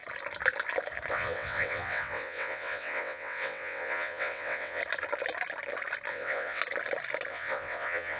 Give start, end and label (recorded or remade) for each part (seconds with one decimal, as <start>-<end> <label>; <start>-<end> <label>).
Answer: 0.0-1.1 recorded; 1.1-4.8 remade; 4.8-6.1 recorded; 6.1-6.6 remade; 6.6-7.3 recorded; 7.3-8.2 remade